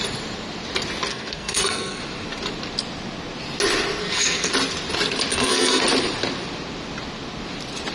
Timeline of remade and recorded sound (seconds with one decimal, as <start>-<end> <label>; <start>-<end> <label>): 0.0-1.1 recorded; 1.1-2.0 remade; 2.0-4.0 recorded; 4.0-4.5 remade; 4.5-5.3 recorded; 5.3-5.8 remade; 5.8-7.9 recorded